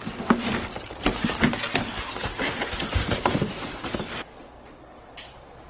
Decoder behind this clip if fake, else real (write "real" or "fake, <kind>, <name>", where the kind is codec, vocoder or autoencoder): real